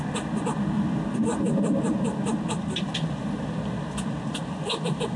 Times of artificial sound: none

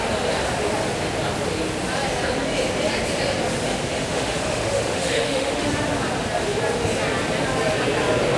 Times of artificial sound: 3.9-5.7 (autoencoder, DAC-VAE)

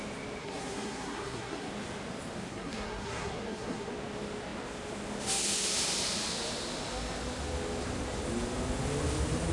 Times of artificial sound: 0.4-1.7 (codec, SNAC); 2.5-3.9

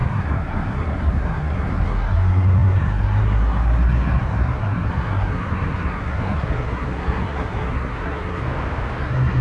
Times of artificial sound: 0.0-8.4 (codec, SNAC); 9.0-9.4

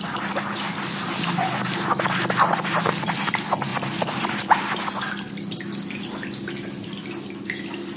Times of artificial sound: 3.7-4.8 (vocoder, BigVGAN v2)

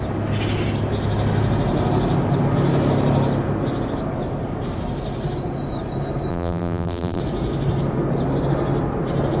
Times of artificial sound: 6.3-7.2 (vocoder, BigVGAN v2)

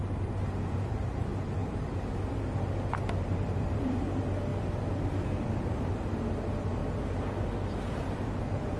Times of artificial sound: 0.0-4.5 (vocoder, BigVGAN v2); 5.4-6.8; 7.9-8.8

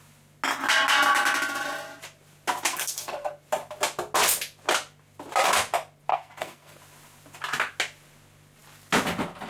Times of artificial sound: 2.7-3.3 (codec, SNAC); 6.1-6.8